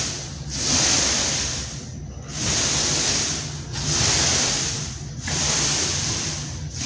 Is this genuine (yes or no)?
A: yes